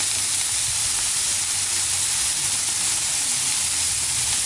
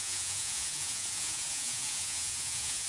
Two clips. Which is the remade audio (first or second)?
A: second